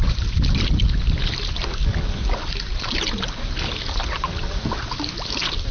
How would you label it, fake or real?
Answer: real